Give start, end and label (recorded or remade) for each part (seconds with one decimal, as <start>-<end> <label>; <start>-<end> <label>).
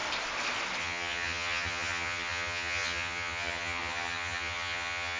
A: 0.0-0.8 recorded; 0.8-5.2 remade